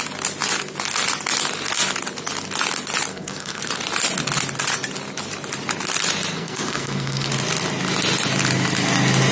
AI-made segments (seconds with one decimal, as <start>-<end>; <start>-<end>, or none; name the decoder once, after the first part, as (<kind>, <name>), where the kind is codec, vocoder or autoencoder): 3.1-3.6 (codec, SNAC); 6.3-7.3